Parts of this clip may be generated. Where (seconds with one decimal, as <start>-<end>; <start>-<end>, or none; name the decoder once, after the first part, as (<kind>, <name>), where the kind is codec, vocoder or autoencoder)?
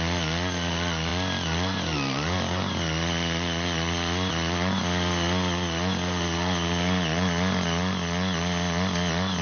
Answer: none